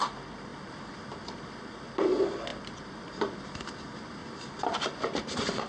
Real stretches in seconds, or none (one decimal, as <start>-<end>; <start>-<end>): 0.0-5.7